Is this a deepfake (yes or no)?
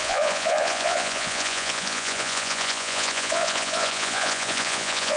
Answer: yes